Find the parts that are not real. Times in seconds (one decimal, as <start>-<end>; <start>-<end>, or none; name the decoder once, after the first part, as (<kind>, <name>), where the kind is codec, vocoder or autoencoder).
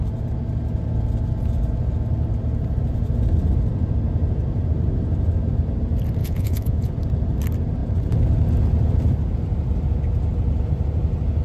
6.2-6.9 (vocoder, Vocos)